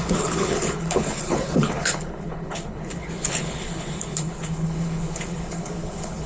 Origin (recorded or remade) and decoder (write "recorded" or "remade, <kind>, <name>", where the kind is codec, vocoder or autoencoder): remade, codec, HILCodec